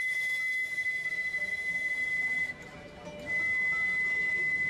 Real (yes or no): yes